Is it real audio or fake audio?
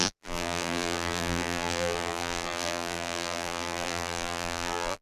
fake